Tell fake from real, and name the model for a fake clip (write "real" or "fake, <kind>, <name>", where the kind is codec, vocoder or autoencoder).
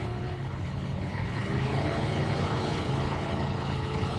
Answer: fake, codec, HILCodec